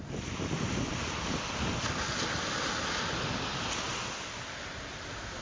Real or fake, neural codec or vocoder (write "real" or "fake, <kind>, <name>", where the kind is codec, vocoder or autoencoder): real